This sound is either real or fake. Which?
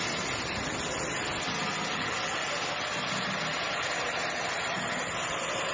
real